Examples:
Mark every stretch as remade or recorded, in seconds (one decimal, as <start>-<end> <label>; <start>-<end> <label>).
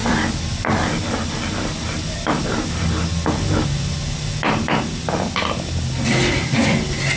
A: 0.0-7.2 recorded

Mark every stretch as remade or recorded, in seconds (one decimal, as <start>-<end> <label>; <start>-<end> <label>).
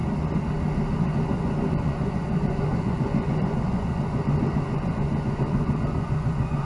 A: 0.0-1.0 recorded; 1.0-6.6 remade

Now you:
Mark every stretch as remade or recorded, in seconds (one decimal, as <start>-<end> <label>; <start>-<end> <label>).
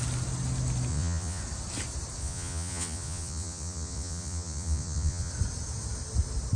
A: 0.0-0.9 recorded; 0.9-1.4 remade; 1.4-2.2 recorded; 2.2-5.3 remade; 5.3-6.6 recorded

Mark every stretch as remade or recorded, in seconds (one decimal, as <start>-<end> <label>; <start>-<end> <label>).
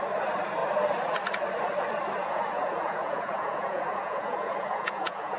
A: 0.0-2.2 recorded; 2.2-5.4 remade